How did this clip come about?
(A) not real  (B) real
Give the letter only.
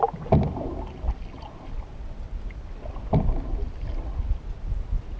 B